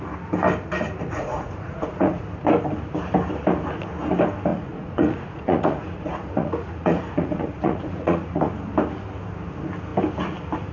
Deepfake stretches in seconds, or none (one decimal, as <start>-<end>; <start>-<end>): 1.0-2.2; 4.5-8.5